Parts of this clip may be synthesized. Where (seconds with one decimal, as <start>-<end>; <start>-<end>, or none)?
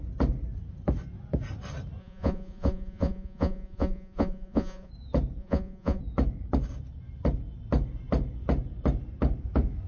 2.0-4.9; 5.4-6.0